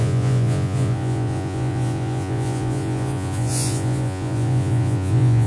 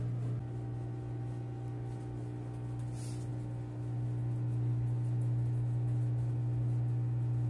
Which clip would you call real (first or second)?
second